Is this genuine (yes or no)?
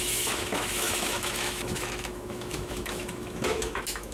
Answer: no